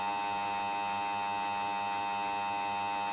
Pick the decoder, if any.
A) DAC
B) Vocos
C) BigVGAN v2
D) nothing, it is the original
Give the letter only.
D